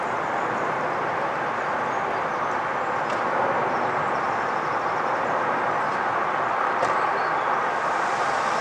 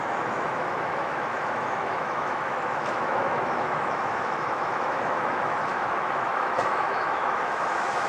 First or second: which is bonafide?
first